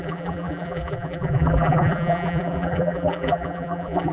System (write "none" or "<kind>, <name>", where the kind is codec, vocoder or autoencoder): vocoder, BigVGAN v2